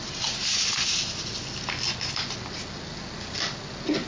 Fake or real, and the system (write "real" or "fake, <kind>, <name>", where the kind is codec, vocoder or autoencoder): real